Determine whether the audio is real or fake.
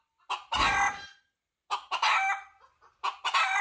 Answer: real